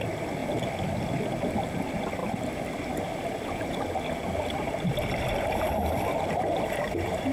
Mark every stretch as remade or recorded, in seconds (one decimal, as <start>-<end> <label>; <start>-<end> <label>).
0.0-2.2 recorded; 2.2-6.6 remade; 6.6-7.3 recorded